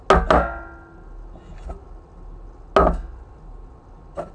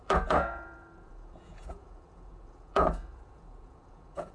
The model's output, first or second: second